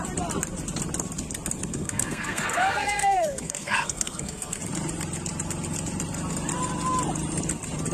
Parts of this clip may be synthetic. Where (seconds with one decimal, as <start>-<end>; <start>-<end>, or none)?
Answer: 1.7-4.6